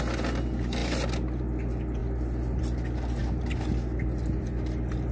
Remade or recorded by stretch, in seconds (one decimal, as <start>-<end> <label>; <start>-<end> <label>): 0.0-5.1 recorded